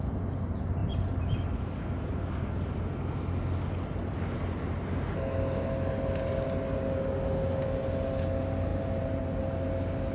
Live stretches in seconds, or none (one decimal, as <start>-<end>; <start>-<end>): 0.0-10.1